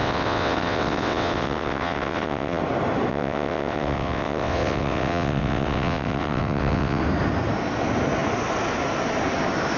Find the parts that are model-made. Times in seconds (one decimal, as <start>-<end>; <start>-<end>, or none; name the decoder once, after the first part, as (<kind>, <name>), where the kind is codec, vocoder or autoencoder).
0.0-2.6 (vocoder, WaveNeXt); 3.1-7.0